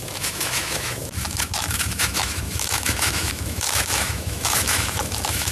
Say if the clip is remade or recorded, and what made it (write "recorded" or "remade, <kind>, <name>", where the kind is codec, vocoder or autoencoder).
remade, autoencoder, DAC-VAE